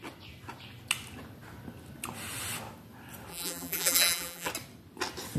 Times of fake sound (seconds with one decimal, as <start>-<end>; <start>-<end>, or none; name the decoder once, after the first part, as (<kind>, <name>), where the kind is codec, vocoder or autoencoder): 3.3-4.5 (vocoder, BigVGAN v2)